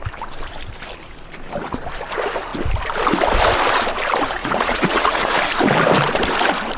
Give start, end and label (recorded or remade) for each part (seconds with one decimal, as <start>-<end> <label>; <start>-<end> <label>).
0.0-4.4 recorded; 4.4-5.4 remade; 5.4-6.8 recorded